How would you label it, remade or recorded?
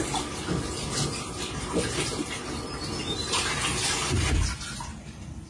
recorded